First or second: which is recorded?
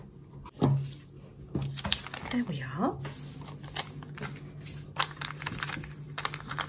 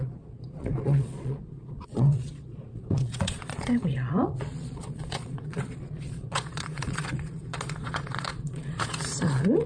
first